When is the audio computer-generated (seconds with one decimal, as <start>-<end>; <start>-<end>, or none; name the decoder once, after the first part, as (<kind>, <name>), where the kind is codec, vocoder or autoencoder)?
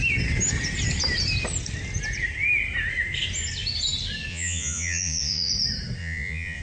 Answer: 4.3-5.5 (vocoder, Vocos); 6.0-6.6